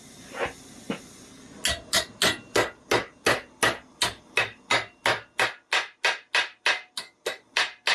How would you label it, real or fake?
real